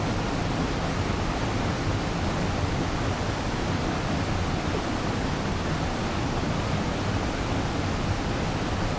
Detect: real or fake real